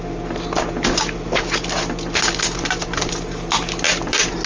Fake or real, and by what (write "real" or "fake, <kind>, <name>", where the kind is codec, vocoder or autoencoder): real